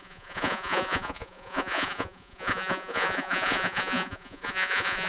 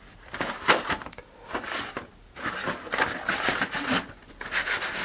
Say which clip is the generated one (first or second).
first